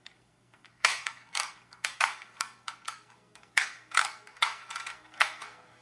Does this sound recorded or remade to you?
remade